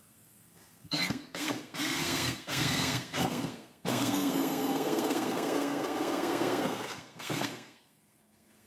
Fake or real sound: fake